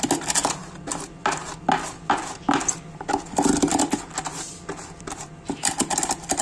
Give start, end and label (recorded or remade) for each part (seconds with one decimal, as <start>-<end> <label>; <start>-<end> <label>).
0.0-6.4 recorded